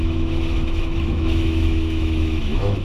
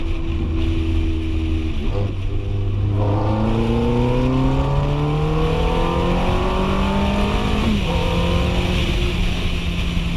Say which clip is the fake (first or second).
first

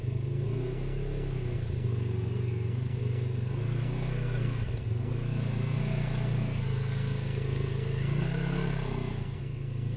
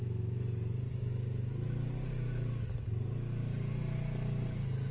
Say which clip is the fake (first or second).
first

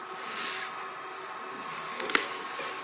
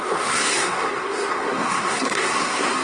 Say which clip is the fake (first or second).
second